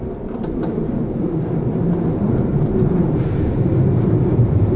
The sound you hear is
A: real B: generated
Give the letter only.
B